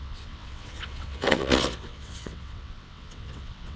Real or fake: fake